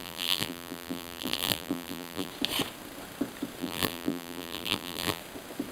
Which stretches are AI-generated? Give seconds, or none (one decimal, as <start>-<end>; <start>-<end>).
0.0-2.3; 3.6-5.2